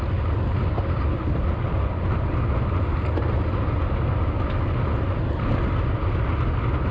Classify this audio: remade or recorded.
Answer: recorded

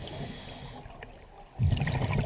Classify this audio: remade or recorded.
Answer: recorded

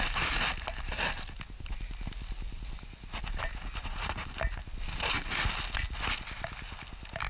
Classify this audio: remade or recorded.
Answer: recorded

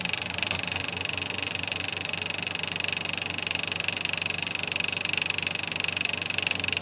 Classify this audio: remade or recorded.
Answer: recorded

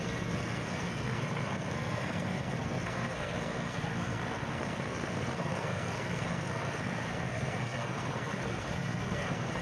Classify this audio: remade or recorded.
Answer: remade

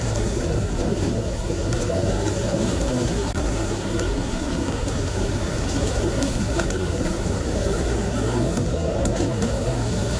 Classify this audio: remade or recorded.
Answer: remade